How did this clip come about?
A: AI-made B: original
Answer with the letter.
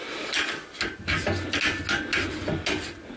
B